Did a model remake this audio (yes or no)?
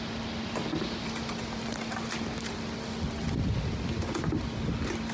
no